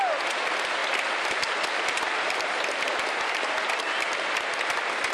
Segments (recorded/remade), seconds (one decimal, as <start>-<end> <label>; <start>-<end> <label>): 0.0-5.1 recorded